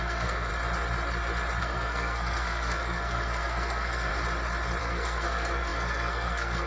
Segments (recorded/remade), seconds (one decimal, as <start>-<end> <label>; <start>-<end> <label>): 0.0-0.5 remade; 0.5-1.6 recorded; 1.6-4.1 remade; 4.1-4.8 recorded; 4.8-6.7 remade